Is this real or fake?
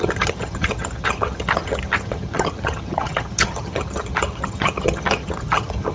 fake